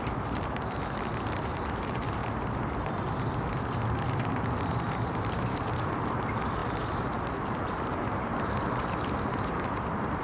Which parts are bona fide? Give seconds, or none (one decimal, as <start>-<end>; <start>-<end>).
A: 2.2-4.1